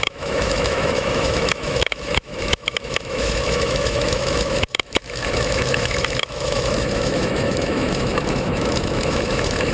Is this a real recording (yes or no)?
no